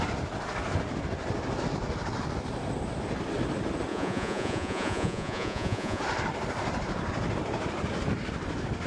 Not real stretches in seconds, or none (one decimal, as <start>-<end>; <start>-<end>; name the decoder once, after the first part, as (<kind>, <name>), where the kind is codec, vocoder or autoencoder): 3.9-6.0 (vocoder, Vocos)

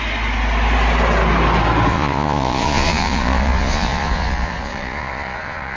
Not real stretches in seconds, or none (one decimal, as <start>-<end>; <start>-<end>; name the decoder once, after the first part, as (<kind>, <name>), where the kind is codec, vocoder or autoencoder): 1.9-5.8 (vocoder, Vocos)

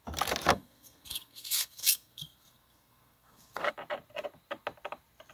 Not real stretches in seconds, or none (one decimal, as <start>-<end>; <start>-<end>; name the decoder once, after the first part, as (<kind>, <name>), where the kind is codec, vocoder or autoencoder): 0.5-3.7 (codec, SNAC)

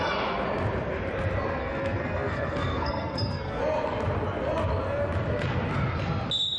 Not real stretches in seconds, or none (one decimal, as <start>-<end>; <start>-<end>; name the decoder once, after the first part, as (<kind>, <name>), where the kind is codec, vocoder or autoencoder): 1.6-3.6 (codec, SNAC)

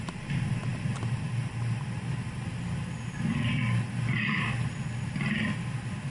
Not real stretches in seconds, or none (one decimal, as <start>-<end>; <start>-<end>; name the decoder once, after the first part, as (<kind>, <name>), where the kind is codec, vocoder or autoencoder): none